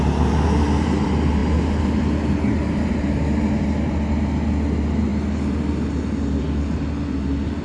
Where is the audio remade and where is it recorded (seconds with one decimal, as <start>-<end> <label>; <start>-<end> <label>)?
0.0-7.6 recorded